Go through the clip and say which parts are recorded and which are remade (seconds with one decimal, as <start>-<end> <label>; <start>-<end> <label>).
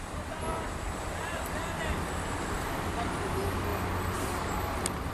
0.0-0.5 recorded; 0.5-3.3 remade; 3.3-3.7 recorded; 3.7-4.5 remade; 4.5-5.1 recorded